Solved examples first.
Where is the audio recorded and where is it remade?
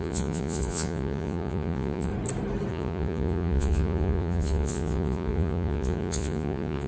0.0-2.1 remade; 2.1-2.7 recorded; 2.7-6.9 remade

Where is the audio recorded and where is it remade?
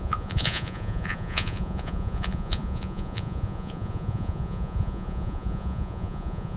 0.0-6.6 remade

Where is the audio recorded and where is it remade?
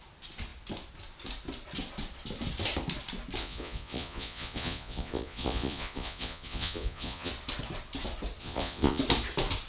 0.0-3.4 recorded; 3.4-7.3 remade; 7.3-8.4 recorded; 8.4-9.0 remade; 9.0-9.7 recorded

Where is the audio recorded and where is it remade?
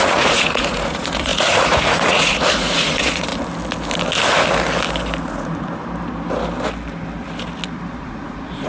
0.0-3.3 remade; 3.3-5.3 recorded; 5.3-5.8 remade; 5.8-8.0 recorded; 8.0-8.7 remade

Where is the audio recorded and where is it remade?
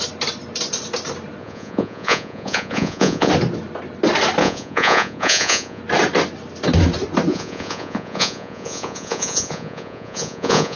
0.0-1.4 recorded; 1.4-3.3 remade; 3.3-4.4 recorded; 4.4-5.8 remade; 5.8-7.3 recorded; 7.3-10.8 remade